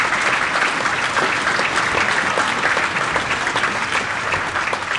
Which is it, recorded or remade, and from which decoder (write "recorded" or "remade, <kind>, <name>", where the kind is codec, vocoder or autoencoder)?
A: recorded